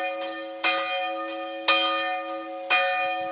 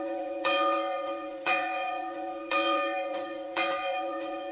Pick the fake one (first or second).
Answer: second